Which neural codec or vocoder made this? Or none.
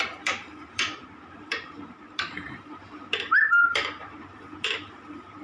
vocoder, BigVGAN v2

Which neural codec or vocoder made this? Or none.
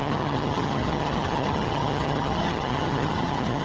vocoder, HiFi-GAN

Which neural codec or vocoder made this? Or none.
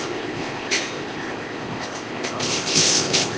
codec, ZipCodec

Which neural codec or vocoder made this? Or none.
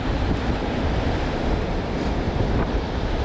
none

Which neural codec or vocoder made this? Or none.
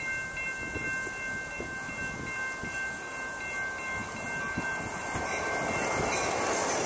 none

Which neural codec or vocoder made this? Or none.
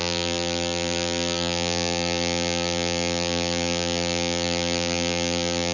vocoder, BigVGAN v2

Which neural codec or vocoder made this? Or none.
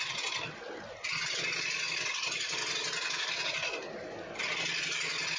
none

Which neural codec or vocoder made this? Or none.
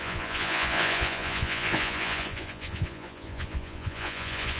vocoder, Vocos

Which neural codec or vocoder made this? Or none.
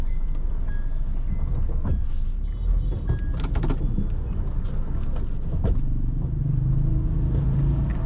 none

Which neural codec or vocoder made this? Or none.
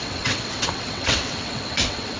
vocoder, WaveNeXt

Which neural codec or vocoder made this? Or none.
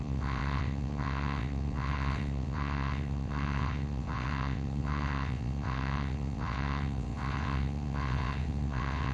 vocoder, WaveNeXt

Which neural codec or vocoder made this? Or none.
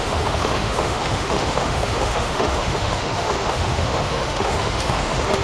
autoencoder, DAC-VAE